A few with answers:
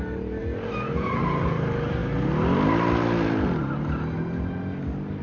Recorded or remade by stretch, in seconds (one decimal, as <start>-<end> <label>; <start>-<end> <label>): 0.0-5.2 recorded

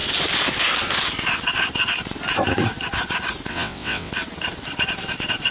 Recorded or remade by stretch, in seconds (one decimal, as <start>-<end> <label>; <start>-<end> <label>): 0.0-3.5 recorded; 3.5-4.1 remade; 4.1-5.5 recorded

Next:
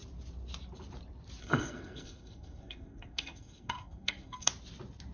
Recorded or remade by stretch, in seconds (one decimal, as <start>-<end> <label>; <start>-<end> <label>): 0.0-1.4 recorded; 1.4-4.5 remade; 4.5-5.1 recorded

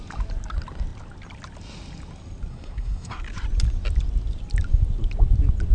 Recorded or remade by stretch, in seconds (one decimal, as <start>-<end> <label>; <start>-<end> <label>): 0.0-2.5 recorded; 2.5-3.2 remade; 3.2-5.7 recorded

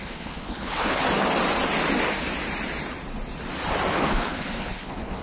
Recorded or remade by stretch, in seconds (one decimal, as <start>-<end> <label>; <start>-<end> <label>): 0.0-1.0 remade; 1.0-3.9 recorded; 3.9-5.2 remade

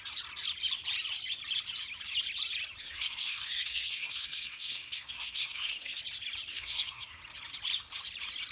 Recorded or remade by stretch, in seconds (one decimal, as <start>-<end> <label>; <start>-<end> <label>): 0.0-2.8 recorded; 2.8-6.0 remade; 6.0-6.5 recorded; 6.5-7.2 remade; 7.2-8.5 recorded